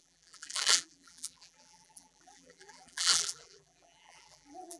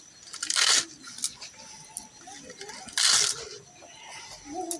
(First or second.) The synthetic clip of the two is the first